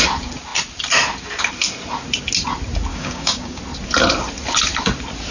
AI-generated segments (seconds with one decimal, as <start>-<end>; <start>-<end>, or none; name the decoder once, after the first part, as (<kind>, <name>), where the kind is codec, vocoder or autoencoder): 2.9-3.6 (codec, DAC)